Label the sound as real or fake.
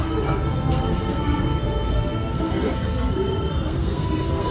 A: fake